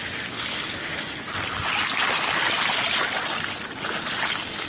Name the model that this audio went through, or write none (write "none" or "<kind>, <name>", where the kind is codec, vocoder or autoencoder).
none